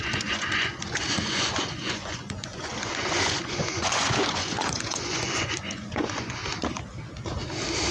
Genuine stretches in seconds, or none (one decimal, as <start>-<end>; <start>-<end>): 6.4-7.9